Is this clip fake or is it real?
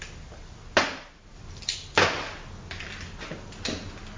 real